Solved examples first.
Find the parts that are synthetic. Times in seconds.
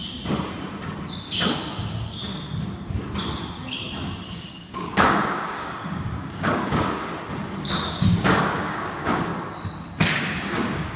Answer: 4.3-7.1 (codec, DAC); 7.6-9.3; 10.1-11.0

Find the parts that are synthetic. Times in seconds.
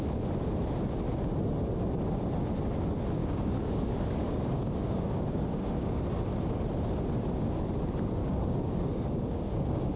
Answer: 3.2-6.0 (codec, DAC); 8.2-10.0